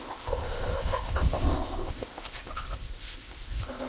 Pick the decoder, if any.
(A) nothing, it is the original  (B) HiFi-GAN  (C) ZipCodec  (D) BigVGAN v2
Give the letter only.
C